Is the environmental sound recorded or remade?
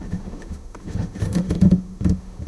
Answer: remade